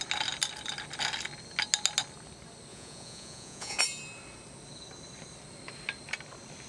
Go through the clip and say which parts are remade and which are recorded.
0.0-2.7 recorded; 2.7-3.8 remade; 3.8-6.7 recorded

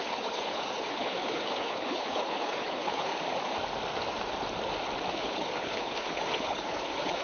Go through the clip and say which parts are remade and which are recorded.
0.0-3.1 remade; 3.1-5.1 recorded; 5.1-7.2 remade

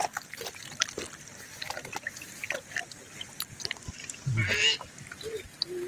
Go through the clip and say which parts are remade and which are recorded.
0.0-5.9 recorded